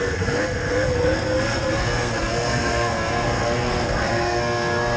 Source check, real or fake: fake